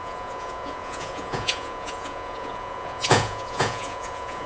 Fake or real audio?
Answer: fake